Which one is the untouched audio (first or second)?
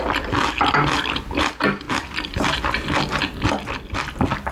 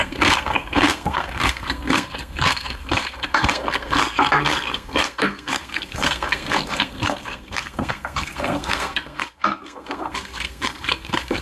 first